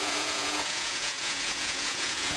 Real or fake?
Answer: fake